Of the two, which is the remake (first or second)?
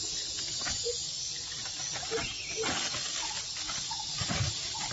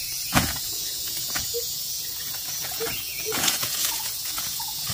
second